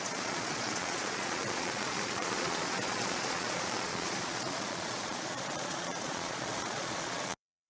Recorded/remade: remade